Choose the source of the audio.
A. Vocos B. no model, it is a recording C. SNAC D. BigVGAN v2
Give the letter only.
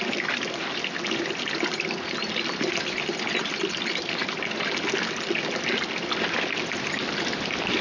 B